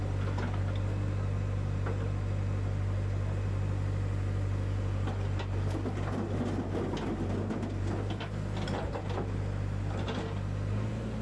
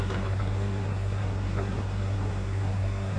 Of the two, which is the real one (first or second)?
first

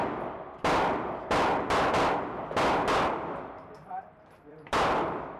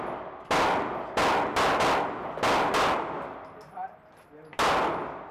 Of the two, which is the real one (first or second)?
second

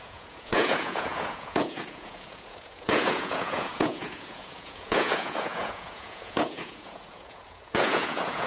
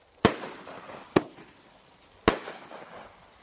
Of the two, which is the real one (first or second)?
second